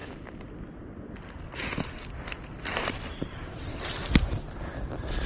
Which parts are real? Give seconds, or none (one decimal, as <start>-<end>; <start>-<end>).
0.0-2.7; 4.1-5.3